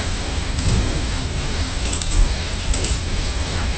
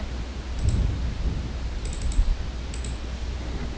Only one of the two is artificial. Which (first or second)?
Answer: first